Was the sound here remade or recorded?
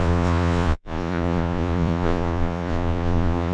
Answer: remade